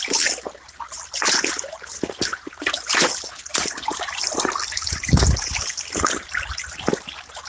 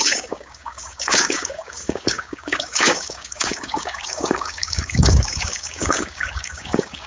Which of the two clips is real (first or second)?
first